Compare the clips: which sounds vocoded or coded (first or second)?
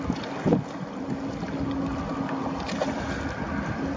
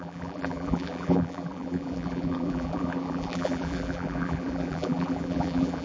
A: second